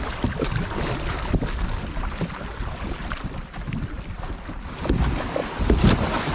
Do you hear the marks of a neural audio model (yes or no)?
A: no